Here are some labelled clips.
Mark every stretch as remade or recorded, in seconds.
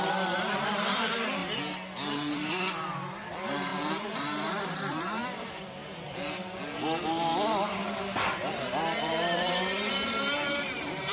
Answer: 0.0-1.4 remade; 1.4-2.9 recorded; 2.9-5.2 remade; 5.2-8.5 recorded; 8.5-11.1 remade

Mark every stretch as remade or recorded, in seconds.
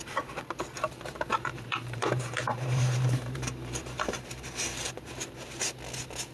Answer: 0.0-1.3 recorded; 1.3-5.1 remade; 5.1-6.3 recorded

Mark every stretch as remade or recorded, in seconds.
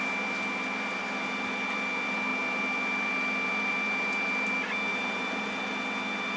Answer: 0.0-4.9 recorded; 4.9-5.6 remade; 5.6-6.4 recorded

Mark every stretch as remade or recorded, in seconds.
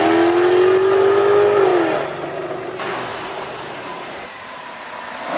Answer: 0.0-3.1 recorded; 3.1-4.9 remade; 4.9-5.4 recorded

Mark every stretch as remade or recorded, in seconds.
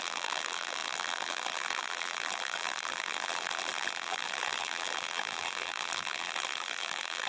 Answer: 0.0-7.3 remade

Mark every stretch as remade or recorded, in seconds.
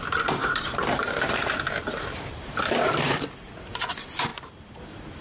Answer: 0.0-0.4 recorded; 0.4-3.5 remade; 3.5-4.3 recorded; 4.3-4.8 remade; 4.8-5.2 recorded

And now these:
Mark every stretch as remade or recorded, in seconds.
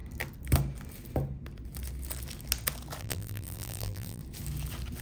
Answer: 0.0-3.0 recorded; 3.0-4.2 remade; 4.2-5.0 recorded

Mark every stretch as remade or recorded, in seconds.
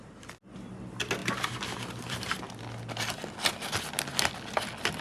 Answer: 0.0-1.2 recorded; 1.2-2.5 remade; 2.5-5.0 recorded